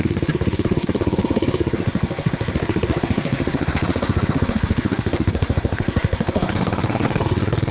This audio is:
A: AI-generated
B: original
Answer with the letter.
A